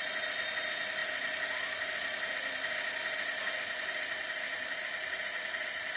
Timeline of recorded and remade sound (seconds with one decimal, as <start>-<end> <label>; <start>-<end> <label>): 0.0-6.0 recorded

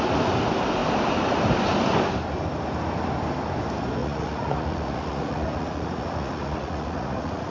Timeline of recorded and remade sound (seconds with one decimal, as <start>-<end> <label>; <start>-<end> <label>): 0.0-4.0 recorded; 4.0-7.5 remade